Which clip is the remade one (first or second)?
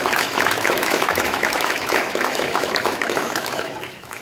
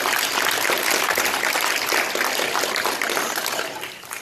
first